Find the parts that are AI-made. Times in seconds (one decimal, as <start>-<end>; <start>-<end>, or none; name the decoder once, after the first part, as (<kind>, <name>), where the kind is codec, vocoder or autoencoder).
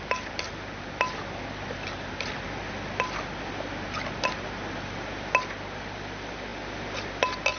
none